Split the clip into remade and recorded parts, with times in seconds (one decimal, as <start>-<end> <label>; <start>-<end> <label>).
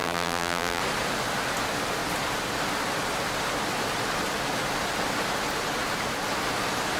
0.0-0.8 remade; 0.8-7.0 recorded